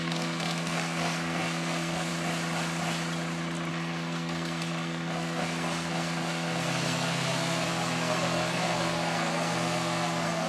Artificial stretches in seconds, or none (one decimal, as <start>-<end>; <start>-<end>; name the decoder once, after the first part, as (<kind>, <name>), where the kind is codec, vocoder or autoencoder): 0.0-2.1 (codec, SNAC); 3.7-10.5